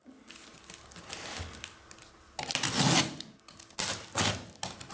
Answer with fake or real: real